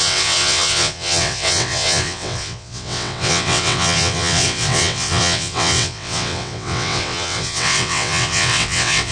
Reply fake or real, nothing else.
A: fake